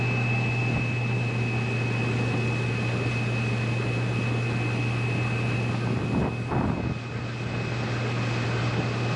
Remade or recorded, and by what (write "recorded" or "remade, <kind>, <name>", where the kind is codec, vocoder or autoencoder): recorded